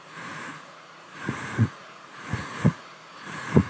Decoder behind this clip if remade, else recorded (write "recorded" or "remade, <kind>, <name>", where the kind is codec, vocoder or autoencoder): remade, vocoder, Vocos